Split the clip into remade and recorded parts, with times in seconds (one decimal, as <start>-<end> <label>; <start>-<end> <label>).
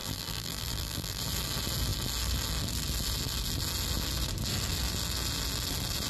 0.0-1.2 remade; 1.2-6.1 recorded